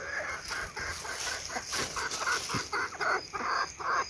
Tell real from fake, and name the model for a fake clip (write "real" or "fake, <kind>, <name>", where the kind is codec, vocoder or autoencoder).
real